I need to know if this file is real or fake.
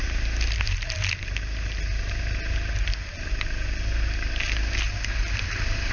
real